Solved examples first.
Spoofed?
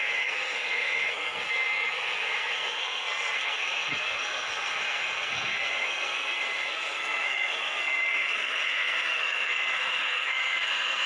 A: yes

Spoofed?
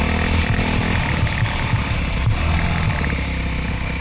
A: no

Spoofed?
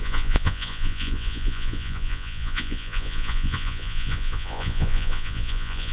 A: yes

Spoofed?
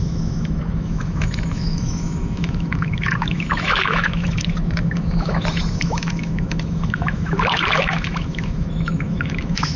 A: yes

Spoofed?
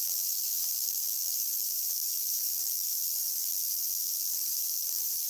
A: yes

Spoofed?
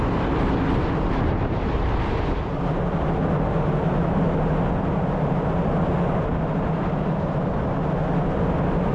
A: no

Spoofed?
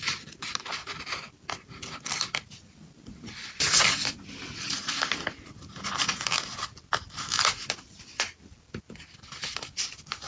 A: no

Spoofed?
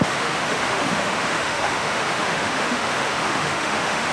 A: yes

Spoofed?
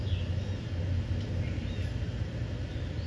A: no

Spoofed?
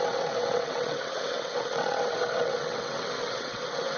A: yes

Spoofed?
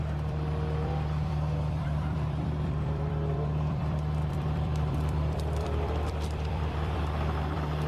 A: yes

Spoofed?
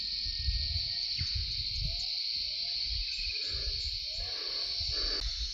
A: no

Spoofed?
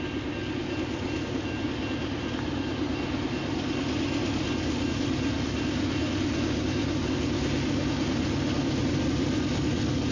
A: no